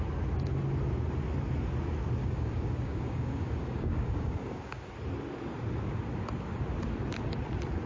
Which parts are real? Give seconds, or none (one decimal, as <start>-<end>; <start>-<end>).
0.0-2.2; 4.9-7.9